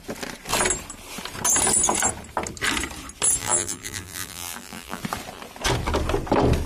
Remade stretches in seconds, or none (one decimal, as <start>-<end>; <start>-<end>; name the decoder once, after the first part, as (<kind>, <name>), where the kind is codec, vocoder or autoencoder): 3.4-5.0 (vocoder, BigVGAN v2)